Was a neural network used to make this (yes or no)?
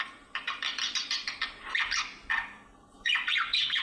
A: yes